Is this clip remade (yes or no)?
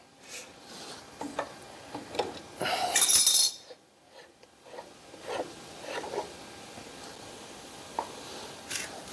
no